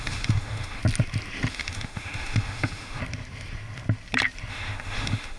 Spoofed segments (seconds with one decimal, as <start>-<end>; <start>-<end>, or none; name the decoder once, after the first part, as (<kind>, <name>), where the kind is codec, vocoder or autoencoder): 0.0-0.8 (autoencoder, DAC-VAE); 1.5-3.0; 4.5-5.4

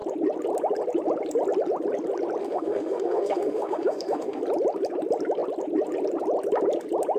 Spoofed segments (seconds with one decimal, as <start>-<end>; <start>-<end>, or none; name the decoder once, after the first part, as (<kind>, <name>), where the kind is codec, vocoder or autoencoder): 2.4-4.4 (autoencoder, DAC-VAE)